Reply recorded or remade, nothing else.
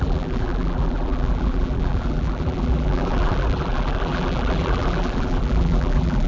remade